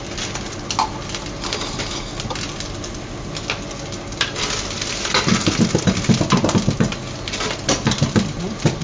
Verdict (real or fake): real